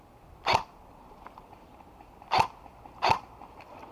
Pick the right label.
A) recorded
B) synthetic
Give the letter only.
A